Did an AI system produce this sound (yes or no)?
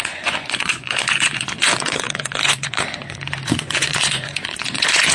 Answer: yes